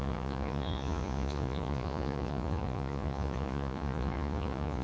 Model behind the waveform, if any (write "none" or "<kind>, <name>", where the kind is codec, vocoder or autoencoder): vocoder, Vocos